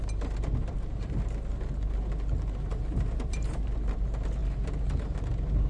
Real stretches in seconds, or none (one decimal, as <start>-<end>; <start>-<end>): 0.0-2.7; 3.6-5.7